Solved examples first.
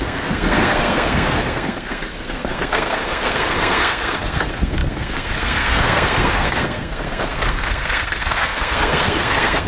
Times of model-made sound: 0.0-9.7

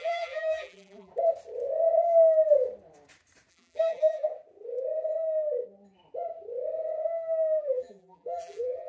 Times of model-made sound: 0.0-1.1; 3.5-4.3; 7.6-8.9

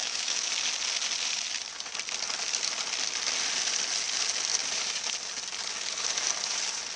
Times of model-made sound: 0.0-0.5